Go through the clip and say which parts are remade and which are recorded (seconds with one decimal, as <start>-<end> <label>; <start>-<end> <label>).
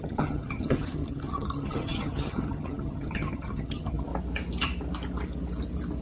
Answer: 0.0-4.1 remade; 4.1-6.0 recorded